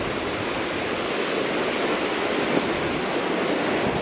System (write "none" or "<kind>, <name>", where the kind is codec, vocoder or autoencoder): none